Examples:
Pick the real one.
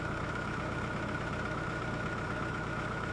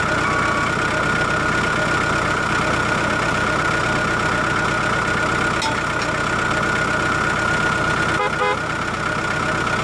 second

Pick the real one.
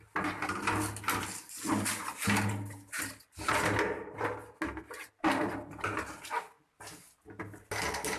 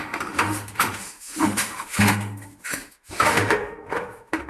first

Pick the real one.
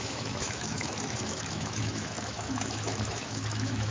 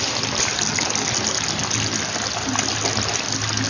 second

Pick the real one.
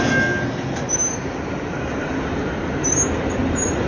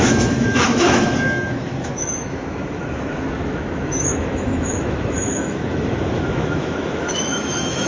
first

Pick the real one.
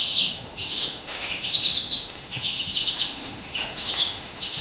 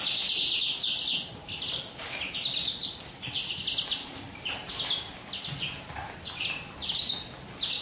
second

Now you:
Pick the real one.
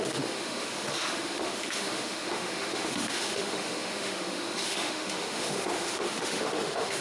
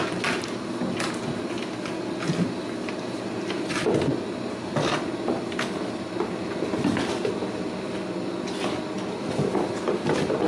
second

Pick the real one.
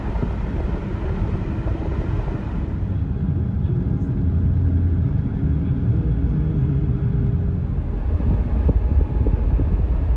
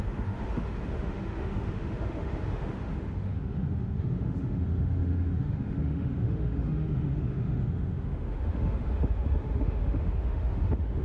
first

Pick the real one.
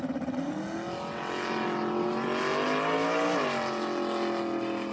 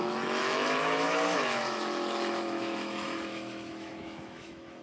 first